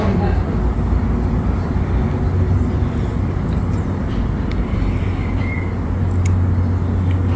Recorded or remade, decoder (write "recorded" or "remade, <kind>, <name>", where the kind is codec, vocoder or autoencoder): recorded